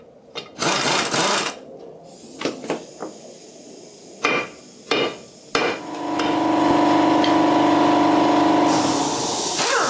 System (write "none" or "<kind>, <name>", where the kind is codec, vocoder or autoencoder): none